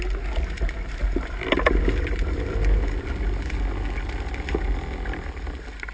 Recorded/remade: recorded